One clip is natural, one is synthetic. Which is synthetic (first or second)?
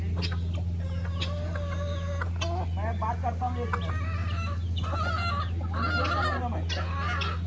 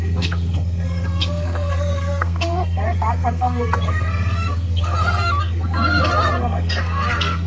second